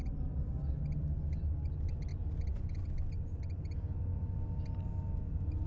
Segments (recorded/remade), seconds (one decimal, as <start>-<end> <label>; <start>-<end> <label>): 0.0-0.7 remade; 0.7-5.7 recorded